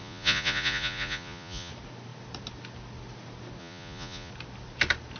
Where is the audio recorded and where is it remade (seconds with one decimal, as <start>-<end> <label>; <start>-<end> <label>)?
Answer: 0.0-1.7 remade; 1.7-3.6 recorded; 3.6-4.3 remade; 4.3-5.2 recorded